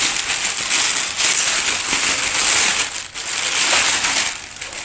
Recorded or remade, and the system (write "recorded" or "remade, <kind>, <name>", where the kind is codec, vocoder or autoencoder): recorded